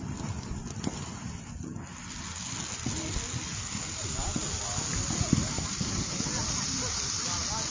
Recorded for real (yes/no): yes